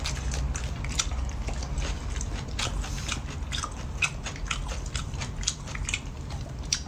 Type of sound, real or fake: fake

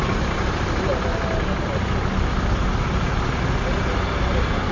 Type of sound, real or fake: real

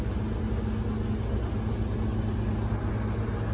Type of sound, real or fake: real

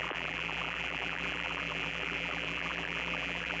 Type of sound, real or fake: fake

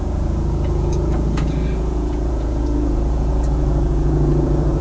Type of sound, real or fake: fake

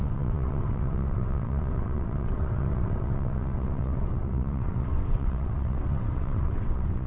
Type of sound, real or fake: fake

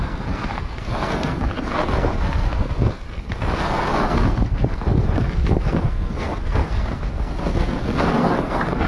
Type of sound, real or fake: fake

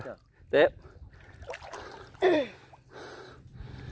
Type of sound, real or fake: fake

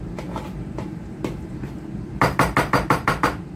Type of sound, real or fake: fake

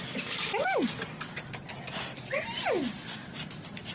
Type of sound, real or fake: real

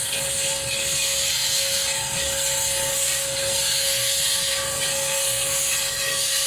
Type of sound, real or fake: fake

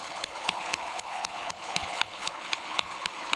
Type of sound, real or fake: fake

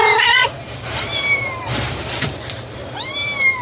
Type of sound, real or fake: fake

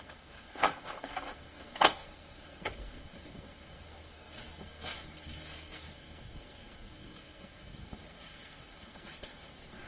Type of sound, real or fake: fake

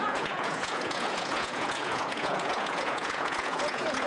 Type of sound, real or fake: fake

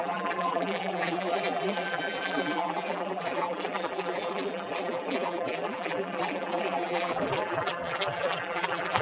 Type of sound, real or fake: fake